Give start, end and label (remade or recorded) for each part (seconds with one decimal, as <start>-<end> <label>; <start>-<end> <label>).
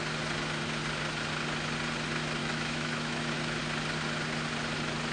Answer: 0.0-2.4 recorded; 2.4-3.6 remade; 3.6-5.1 recorded